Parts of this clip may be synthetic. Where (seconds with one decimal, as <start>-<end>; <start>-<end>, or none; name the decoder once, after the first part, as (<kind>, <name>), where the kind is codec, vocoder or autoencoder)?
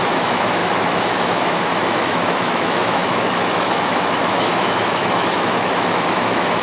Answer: 0.0-6.6 (autoencoder, DAC-VAE)